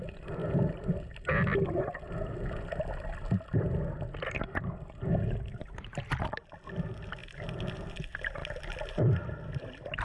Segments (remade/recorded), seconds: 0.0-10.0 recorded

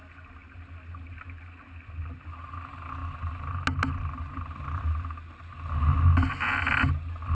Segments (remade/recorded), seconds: 0.0-7.3 recorded

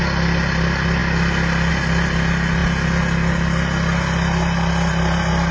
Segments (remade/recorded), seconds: 0.0-5.5 recorded

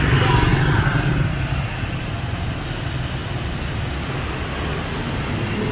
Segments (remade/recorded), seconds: 0.0-0.5 recorded; 0.5-2.5 remade; 2.5-5.7 recorded

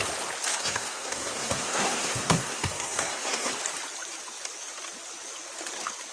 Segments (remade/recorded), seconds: 0.0-0.5 recorded; 0.5-3.5 remade; 3.5-6.1 recorded

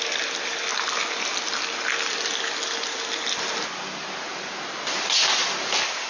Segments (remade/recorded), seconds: 0.0-6.1 recorded

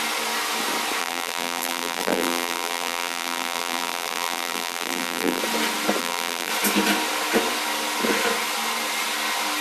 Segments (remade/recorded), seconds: 0.0-1.0 recorded; 1.0-5.4 remade; 5.4-6.0 recorded; 6.0-6.5 remade; 6.5-9.6 recorded

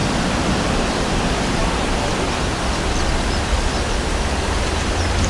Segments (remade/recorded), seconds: 0.0-0.8 recorded; 0.8-1.6 remade; 1.6-4.3 recorded; 4.3-5.3 remade